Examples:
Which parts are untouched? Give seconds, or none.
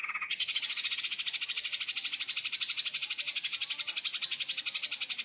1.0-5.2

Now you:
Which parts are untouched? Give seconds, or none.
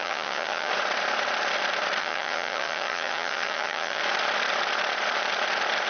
0.7-2.0; 4.0-5.9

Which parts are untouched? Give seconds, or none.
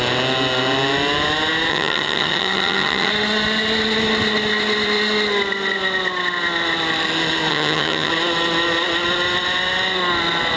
0.0-1.7; 3.1-7.5; 8.1-10.6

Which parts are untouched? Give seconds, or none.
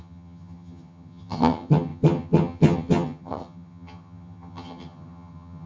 none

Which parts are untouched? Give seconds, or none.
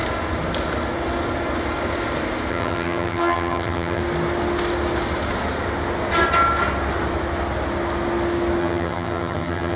0.0-2.5; 4.0-8.6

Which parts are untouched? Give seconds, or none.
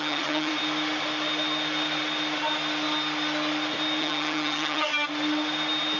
0.5-4.0; 4.9-6.0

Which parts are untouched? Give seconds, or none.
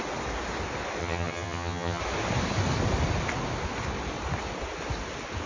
0.0-1.0; 2.0-5.5